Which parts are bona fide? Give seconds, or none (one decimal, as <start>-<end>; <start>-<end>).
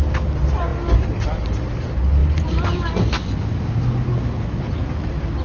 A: 0.0-5.4